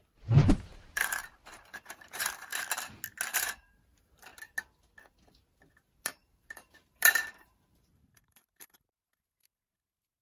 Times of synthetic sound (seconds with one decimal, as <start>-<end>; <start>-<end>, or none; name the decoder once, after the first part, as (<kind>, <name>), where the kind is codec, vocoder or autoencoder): 0.0-2.5 (vocoder, BigVGAN v2); 3.3-4.3; 5.8-10.2